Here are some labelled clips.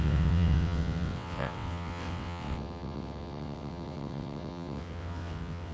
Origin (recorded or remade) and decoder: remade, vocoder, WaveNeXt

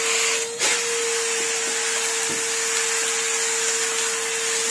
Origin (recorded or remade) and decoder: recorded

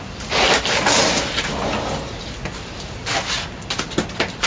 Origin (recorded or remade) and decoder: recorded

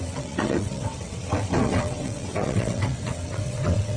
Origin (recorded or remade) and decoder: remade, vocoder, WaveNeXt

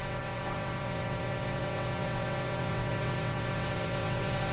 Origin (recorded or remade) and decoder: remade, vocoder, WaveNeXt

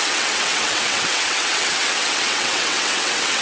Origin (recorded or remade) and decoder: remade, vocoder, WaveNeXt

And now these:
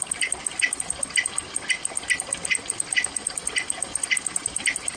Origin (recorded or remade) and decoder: recorded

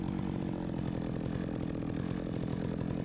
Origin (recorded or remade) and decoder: recorded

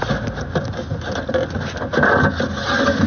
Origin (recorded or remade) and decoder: recorded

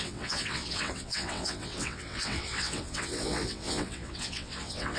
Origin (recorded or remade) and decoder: remade, vocoder, WaveNeXt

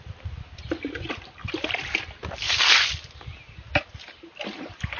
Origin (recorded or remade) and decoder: recorded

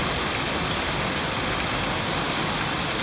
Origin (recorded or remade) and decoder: recorded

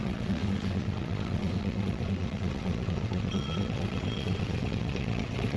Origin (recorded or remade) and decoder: remade, vocoder, WaveNeXt